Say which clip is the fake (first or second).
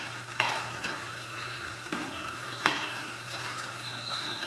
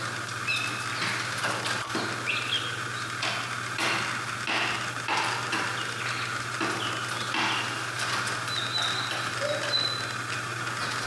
first